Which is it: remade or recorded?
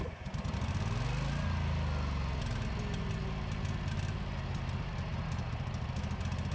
recorded